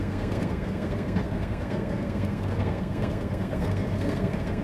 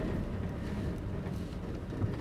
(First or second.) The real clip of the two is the second